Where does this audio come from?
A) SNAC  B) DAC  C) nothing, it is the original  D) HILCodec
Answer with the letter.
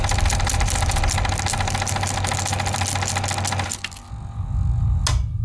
C